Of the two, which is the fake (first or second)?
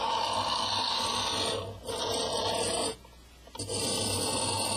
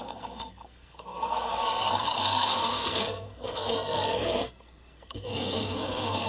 second